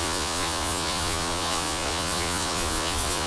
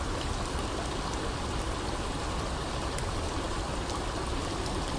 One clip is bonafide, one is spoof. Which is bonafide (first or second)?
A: second